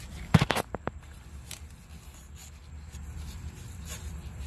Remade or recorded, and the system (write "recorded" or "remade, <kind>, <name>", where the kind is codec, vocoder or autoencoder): remade, vocoder, BigVGAN v2